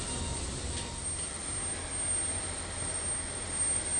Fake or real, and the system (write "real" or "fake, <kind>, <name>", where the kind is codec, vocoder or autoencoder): real